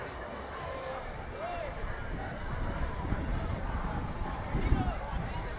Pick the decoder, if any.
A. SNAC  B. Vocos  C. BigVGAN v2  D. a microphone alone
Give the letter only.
C